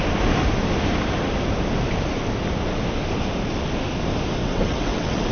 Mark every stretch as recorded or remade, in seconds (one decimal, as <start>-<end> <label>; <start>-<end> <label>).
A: 0.0-4.4 recorded; 4.4-5.3 remade